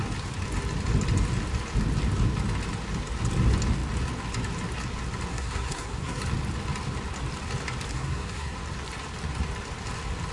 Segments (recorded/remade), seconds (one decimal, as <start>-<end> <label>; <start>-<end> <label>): 0.0-5.3 recorded; 5.3-6.2 remade; 6.2-7.9 recorded; 7.9-8.6 remade; 8.6-10.3 recorded